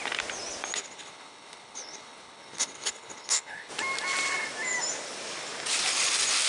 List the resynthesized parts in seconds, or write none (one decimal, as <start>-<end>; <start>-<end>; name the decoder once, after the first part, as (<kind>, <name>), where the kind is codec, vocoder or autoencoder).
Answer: 0.8-3.7 (codec, HILCodec)